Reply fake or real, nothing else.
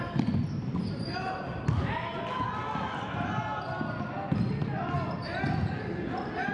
real